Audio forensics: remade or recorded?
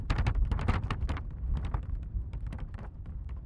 remade